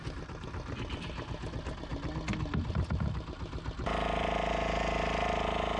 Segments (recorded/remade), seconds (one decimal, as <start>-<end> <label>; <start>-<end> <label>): 0.0-5.8 recorded